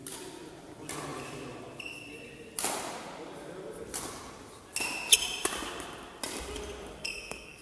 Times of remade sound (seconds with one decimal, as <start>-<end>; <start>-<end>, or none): 7.0-7.6